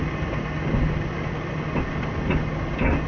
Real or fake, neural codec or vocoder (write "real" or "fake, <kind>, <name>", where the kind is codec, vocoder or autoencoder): real